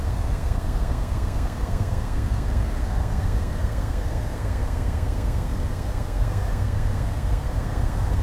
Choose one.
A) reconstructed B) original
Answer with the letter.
A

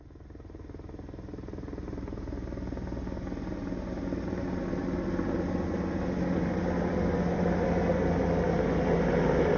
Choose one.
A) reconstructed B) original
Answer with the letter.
B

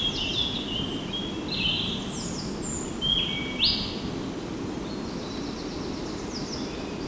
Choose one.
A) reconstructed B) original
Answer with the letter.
B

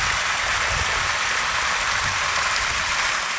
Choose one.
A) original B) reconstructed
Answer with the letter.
A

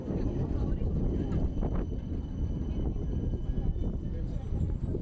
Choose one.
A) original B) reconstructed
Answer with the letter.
A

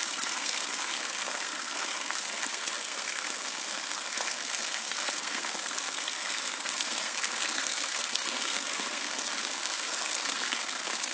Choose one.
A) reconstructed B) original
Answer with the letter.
A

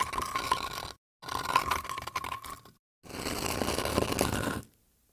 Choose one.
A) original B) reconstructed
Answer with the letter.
A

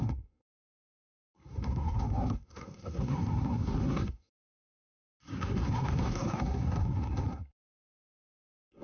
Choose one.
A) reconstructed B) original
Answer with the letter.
A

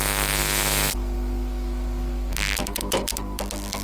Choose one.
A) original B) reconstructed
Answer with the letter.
B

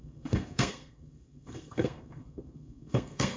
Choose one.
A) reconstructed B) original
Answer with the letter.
A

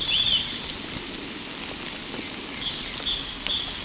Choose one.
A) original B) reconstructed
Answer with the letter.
A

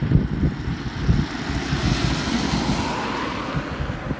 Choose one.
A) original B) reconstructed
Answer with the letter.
A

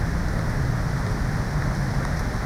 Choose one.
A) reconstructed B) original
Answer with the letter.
B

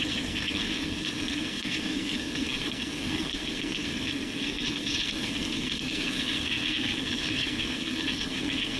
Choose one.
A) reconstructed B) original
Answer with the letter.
A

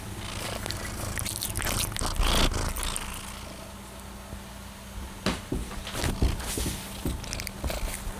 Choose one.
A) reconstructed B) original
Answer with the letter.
B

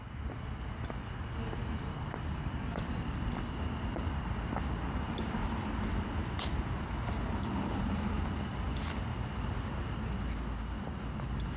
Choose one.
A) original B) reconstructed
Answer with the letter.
A